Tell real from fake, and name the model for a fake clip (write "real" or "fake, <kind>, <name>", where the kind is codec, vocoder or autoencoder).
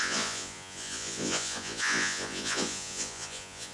fake, vocoder, Vocos